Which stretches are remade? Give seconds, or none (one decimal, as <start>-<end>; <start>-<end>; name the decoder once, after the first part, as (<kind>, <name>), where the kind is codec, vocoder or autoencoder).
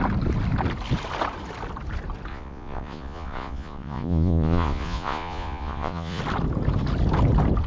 2.3-6.2 (vocoder, Vocos)